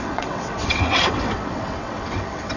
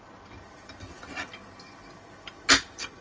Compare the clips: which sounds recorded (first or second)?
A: second